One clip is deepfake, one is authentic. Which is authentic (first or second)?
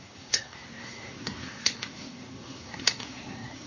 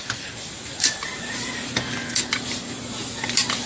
second